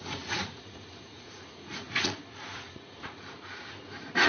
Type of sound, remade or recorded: remade